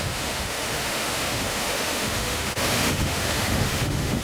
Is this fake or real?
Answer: fake